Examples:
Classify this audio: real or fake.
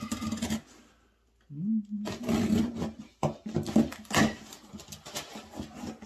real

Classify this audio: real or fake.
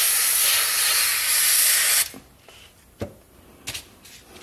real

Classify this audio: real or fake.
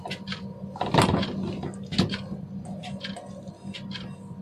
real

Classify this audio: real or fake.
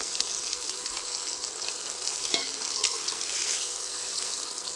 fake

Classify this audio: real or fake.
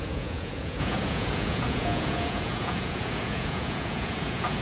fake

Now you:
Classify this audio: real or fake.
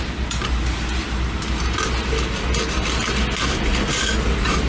real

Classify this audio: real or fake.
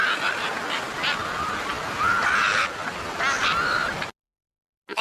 real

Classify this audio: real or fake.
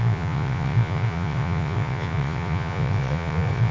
fake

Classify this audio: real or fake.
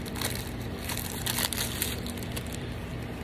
real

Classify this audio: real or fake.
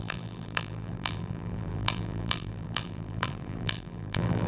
fake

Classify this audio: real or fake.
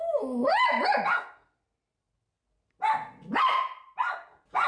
real